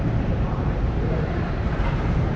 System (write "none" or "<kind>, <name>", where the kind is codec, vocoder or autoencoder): vocoder, BigVGAN v2